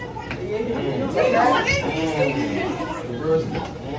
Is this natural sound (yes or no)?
yes